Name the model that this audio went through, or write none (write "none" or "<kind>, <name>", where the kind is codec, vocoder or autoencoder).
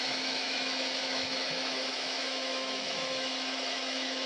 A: autoencoder, DAC-VAE